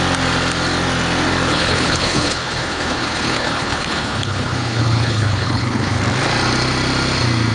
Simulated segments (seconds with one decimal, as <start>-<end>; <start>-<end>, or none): 1.5-6.0